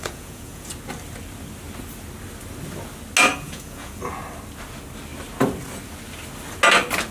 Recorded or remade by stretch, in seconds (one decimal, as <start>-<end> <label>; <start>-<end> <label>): 0.0-0.7 remade; 0.7-3.3 recorded; 3.3-4.0 remade; 4.0-7.1 recorded